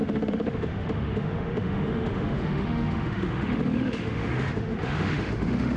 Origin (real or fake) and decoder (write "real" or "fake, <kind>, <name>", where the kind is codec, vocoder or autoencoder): fake, autoencoder, DAC-VAE